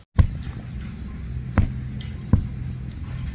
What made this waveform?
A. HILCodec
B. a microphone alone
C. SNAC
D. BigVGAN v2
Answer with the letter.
B